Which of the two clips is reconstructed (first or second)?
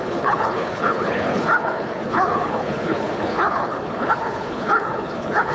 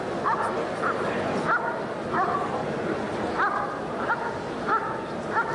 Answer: first